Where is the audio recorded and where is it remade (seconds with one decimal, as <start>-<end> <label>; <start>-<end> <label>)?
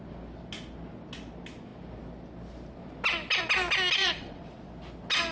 0.0-4.0 recorded; 4.0-4.7 remade; 4.7-5.3 recorded